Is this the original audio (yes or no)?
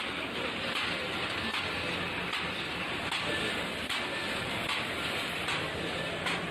yes